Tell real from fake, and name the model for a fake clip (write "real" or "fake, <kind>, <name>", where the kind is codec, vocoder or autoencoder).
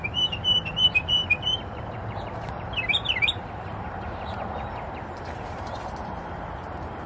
fake, vocoder, BigVGAN v2